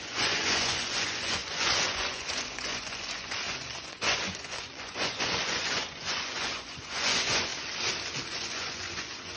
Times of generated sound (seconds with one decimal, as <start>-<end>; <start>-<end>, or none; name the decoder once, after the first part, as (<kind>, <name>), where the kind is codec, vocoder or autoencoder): 0.0-7.5 (vocoder, Vocos); 8.3-9.4